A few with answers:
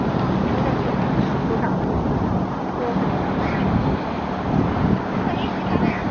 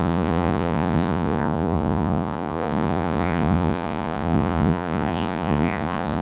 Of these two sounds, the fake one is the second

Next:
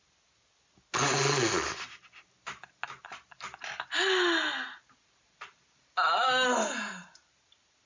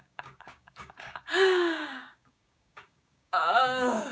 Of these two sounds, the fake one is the second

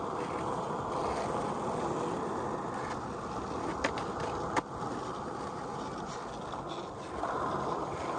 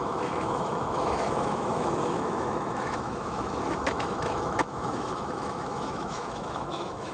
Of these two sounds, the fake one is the second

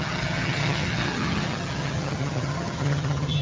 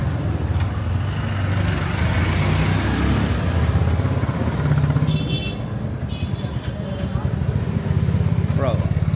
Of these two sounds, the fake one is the first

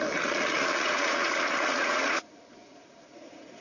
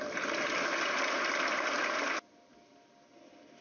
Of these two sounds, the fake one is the first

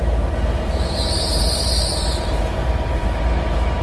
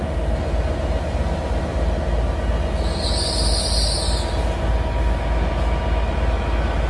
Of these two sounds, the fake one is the first